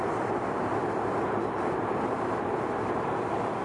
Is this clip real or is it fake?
fake